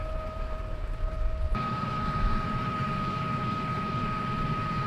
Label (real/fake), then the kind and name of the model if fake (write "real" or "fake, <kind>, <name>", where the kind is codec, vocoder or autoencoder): fake, vocoder, BigVGAN v2